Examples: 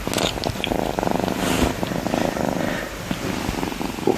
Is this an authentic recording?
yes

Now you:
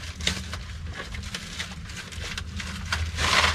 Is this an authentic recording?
yes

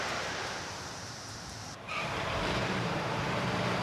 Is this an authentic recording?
no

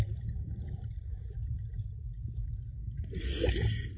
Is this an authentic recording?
yes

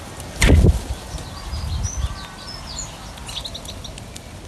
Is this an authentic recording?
yes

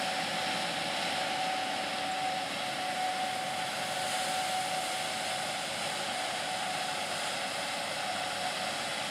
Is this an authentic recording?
yes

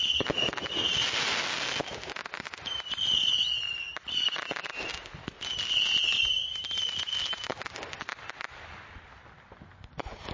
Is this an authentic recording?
yes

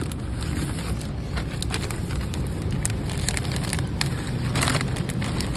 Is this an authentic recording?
yes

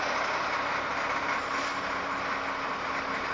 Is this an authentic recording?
yes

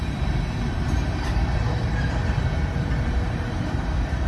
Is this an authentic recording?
no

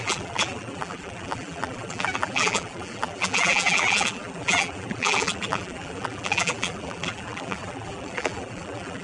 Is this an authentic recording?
no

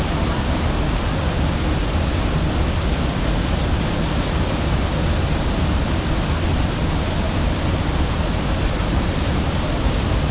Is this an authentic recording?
yes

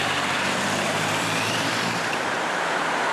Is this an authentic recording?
no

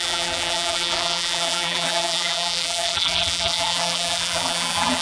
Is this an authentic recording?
no